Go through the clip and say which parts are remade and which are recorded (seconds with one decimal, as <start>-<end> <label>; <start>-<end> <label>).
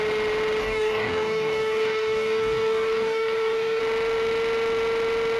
0.0-0.6 recorded; 0.6-3.8 remade; 3.8-5.4 recorded